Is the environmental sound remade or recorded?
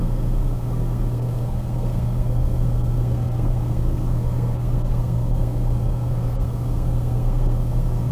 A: remade